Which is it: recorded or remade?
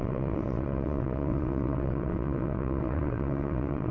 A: remade